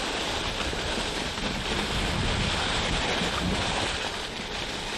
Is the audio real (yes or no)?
yes